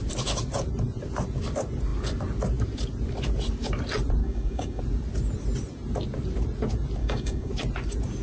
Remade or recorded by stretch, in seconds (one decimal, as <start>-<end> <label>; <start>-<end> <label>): 0.0-4.2 recorded; 4.2-4.8 remade; 4.8-7.0 recorded; 7.0-7.5 remade; 7.5-8.2 recorded